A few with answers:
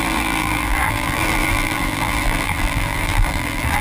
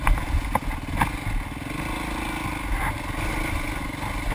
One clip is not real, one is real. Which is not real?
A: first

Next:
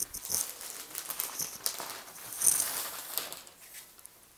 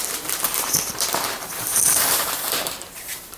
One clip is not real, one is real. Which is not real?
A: second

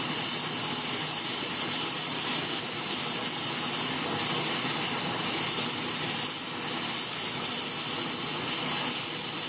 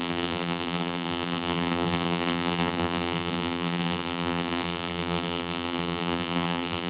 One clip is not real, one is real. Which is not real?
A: second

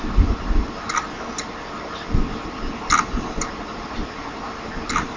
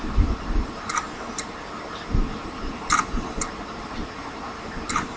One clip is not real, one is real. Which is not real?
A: second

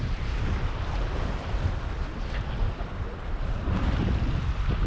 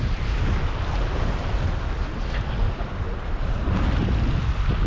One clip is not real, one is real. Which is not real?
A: first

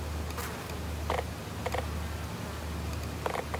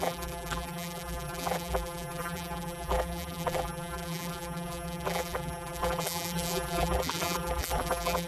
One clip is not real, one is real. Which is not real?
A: second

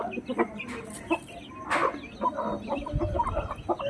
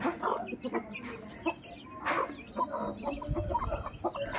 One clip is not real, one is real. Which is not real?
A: first